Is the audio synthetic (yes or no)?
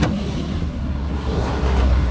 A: yes